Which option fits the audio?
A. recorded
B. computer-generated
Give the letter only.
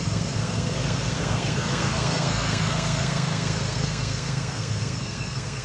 B